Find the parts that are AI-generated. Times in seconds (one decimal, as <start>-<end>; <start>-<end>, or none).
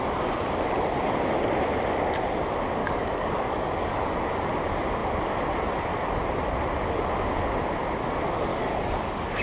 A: 2.8-4.5; 8.5-9.4